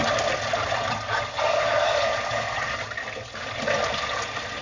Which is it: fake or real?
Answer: real